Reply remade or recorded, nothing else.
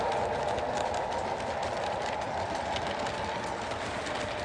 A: recorded